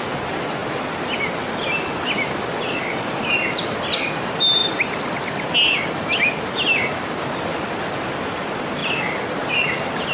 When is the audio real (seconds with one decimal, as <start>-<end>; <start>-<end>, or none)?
0.0-10.1